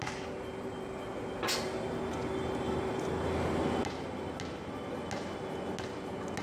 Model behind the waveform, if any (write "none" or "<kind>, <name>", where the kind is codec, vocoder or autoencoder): none